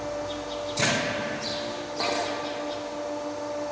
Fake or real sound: real